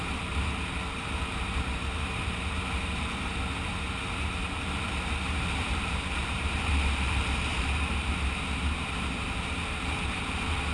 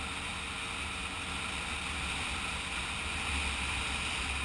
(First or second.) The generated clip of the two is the first